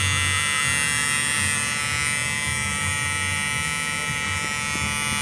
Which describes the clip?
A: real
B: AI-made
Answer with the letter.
A